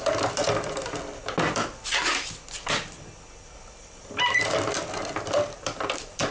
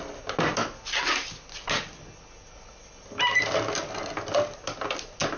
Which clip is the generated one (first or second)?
first